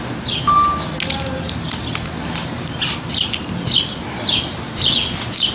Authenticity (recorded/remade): recorded